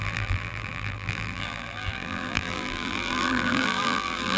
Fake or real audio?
fake